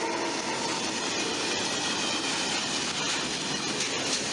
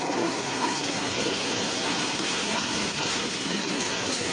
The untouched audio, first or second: first